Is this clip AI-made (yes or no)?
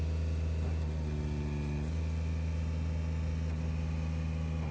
no